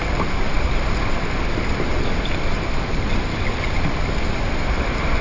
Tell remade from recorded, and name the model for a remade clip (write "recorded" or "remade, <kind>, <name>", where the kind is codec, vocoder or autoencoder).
recorded